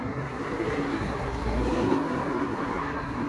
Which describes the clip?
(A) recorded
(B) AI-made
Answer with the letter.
B